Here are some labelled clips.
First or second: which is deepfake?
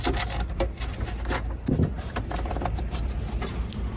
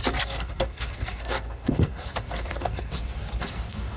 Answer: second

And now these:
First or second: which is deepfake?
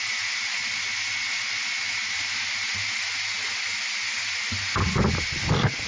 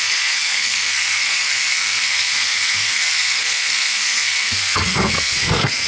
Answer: second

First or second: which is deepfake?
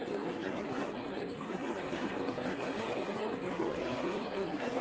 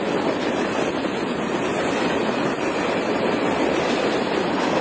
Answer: first